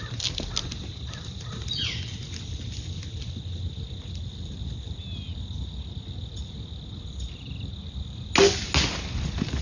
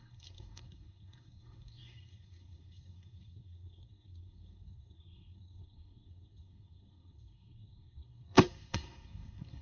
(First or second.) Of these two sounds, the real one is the first